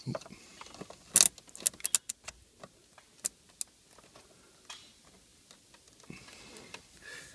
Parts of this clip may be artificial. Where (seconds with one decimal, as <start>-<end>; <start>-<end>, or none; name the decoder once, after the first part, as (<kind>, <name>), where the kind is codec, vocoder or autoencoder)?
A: none